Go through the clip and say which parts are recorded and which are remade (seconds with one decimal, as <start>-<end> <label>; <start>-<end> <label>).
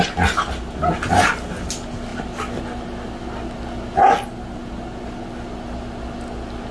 0.0-6.7 recorded